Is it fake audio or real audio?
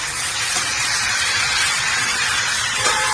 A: fake